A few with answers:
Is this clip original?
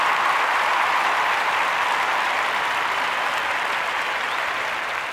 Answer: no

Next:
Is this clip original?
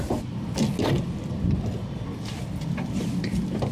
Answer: yes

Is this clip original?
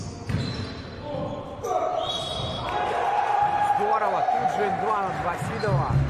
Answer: yes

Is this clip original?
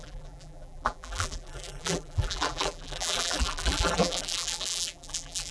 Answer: no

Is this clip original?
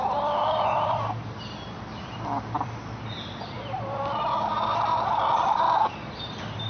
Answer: no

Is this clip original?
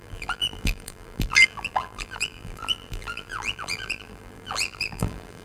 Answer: no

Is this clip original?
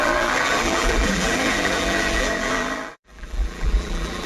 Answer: no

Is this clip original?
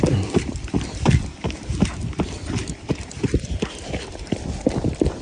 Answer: no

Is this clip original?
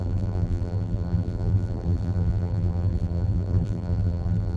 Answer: no